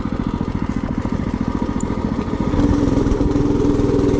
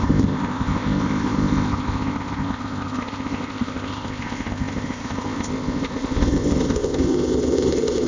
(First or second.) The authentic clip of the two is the first